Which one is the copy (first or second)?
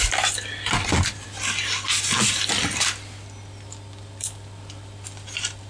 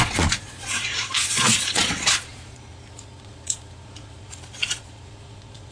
second